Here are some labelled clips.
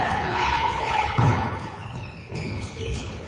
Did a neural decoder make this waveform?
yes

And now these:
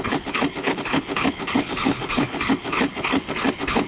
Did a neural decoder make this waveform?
yes